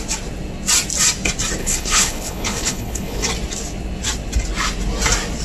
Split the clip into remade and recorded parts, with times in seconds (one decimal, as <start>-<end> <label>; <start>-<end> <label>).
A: 0.0-1.6 recorded; 1.6-3.3 remade; 3.3-5.4 recorded